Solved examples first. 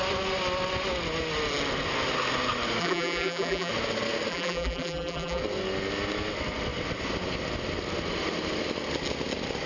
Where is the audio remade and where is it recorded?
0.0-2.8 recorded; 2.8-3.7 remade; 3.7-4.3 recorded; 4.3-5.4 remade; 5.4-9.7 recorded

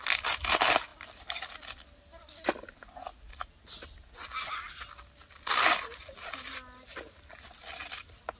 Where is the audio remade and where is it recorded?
0.0-8.4 recorded

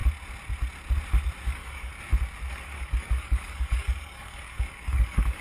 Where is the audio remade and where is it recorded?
0.0-1.4 recorded; 1.4-1.9 remade; 1.9-2.5 recorded; 2.5-5.4 remade

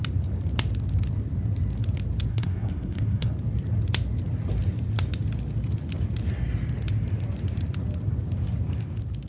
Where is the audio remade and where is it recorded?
0.0-2.3 recorded; 2.3-3.3 remade; 3.3-9.3 recorded

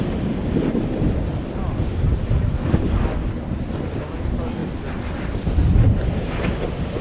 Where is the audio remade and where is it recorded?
0.0-7.0 recorded